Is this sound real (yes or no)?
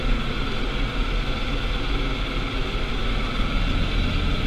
yes